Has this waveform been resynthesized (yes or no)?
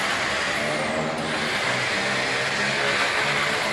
yes